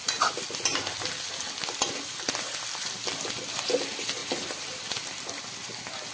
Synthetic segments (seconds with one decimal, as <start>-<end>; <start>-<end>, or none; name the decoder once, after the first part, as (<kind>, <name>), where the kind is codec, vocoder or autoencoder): none